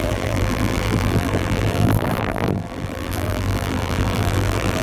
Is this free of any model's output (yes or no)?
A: no